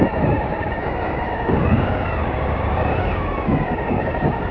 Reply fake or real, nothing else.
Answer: fake